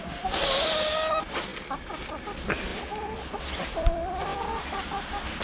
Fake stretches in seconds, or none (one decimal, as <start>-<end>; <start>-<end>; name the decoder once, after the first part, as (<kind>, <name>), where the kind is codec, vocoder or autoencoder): none